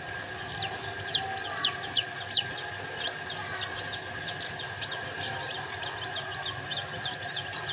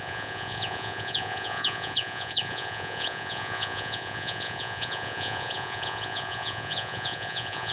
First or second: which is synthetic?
second